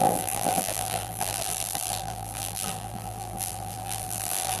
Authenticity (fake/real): fake